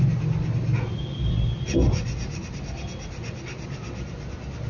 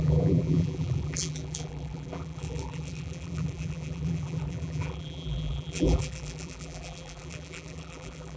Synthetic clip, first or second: second